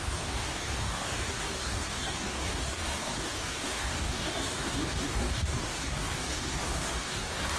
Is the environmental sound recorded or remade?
remade